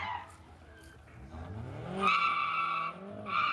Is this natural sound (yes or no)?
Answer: yes